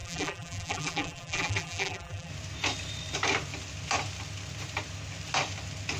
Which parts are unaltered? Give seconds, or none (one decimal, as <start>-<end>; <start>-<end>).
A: 2.3-6.0